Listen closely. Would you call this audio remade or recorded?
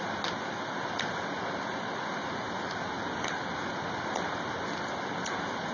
recorded